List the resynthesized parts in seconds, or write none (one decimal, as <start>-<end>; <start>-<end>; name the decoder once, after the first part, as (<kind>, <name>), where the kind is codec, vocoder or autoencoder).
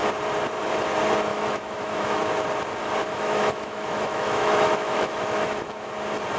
1.3-2.3 (autoencoder, DAC-VAE); 3.0-5.9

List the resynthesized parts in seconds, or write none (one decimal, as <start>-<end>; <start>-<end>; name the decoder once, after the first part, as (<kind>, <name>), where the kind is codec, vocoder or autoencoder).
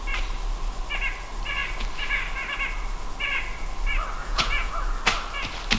4.2-4.7 (vocoder, Vocos)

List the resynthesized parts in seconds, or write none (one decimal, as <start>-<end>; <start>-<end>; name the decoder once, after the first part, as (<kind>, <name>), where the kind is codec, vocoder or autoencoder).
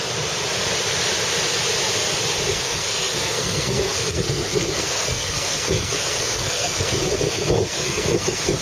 2.5-8.6 (codec, SNAC)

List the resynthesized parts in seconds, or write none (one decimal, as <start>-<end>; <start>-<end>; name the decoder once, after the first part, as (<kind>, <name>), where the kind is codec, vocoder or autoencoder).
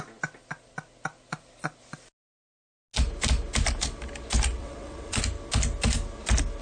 4.6-5.2 (vocoder, WaveNeXt)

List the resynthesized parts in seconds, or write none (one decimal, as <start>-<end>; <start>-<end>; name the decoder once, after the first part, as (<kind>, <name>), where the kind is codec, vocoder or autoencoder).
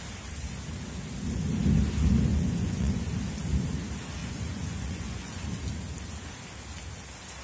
2.3-3.0 (vocoder, Vocos); 4.2-5.4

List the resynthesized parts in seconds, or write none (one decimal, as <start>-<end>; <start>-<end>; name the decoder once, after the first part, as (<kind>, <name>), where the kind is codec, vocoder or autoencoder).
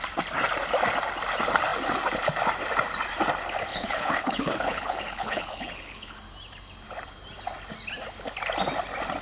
3.7-6.2 (codec, HILCodec)